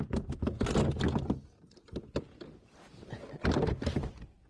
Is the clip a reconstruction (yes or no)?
no